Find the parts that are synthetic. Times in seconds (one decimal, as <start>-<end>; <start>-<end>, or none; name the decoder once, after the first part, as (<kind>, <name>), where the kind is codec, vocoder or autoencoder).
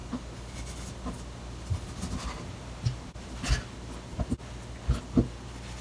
none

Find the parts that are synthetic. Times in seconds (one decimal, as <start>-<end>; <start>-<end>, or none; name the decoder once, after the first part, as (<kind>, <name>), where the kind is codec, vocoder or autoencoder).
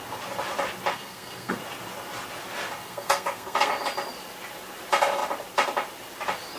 0.9-1.6 (codec, SNAC); 2.8-3.7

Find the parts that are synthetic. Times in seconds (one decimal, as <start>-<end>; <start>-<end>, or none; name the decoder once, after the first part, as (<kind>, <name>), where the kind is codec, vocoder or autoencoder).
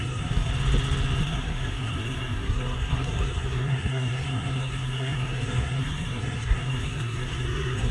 0.0-0.5 (codec, SNAC); 1.2-7.9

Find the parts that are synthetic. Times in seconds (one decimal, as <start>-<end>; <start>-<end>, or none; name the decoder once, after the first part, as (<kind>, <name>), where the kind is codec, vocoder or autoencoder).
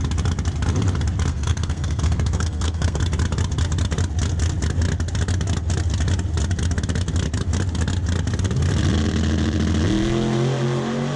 1.3-3.0 (codec, SNAC)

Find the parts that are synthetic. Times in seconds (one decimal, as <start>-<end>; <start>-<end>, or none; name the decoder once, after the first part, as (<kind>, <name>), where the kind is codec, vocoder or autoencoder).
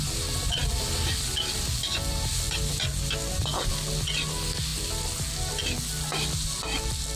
none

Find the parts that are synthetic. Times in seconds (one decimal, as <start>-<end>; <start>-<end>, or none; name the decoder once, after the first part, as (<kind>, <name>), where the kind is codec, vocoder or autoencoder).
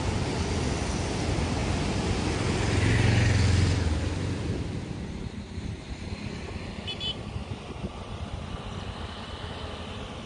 none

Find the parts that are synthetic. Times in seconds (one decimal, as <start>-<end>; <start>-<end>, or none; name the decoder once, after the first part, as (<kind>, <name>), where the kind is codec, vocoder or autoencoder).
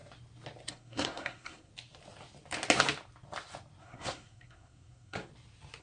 0.7-1.7 (codec, SNAC); 3.8-5.3